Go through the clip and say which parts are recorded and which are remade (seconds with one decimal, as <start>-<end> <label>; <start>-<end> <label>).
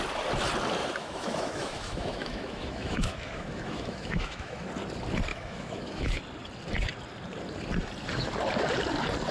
0.0-0.8 recorded; 0.8-4.7 remade; 4.7-5.3 recorded; 5.3-6.2 remade; 6.2-9.3 recorded